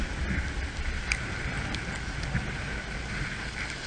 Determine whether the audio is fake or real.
real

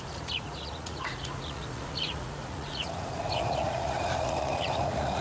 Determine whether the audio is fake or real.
fake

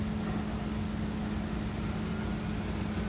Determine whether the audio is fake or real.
real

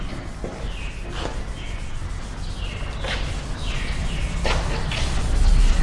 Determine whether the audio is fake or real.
real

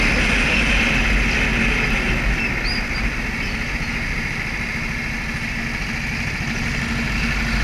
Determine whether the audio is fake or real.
real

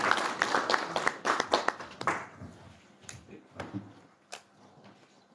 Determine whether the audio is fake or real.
real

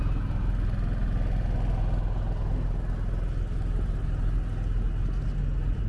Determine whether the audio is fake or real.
real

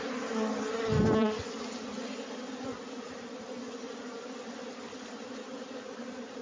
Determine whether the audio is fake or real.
real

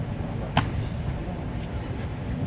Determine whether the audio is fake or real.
real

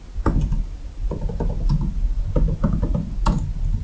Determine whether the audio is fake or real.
real